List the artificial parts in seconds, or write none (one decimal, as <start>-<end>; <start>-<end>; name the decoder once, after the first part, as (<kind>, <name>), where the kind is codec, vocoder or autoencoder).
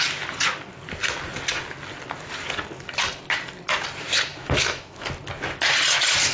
4.3-5.1 (autoencoder, DAC-VAE)